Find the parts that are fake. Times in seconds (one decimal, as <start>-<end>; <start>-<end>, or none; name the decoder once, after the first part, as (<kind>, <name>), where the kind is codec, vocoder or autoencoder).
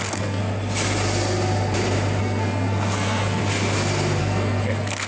0.0-0.4 (codec, SNAC); 2.2-3.4; 4.2-5.1